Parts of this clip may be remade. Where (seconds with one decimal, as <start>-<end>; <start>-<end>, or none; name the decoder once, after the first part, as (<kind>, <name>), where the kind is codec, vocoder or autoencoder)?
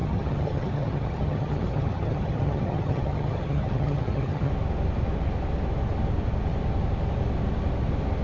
0.0-4.5 (vocoder, HiFi-GAN)